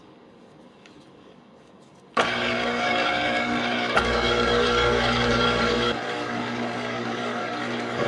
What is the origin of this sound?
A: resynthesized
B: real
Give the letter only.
A